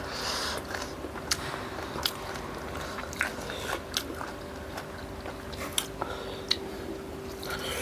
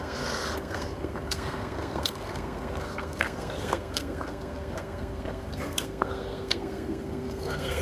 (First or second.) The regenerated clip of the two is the second